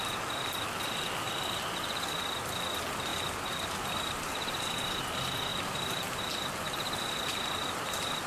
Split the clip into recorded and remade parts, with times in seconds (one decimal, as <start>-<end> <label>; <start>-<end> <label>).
0.0-3.1 recorded; 3.1-4.3 remade; 4.3-5.5 recorded; 5.5-6.2 remade; 6.2-8.3 recorded